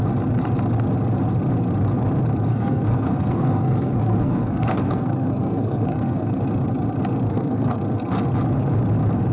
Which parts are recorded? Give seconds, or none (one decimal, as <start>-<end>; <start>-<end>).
0.0-2.5; 6.4-7.3; 7.8-9.3

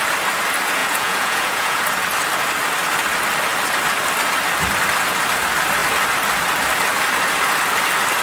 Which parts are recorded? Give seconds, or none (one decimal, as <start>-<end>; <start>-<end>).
0.0-0.8; 1.8-8.2

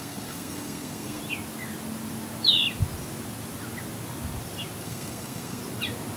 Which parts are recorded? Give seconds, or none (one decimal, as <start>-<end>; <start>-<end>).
1.2-4.8; 5.6-6.2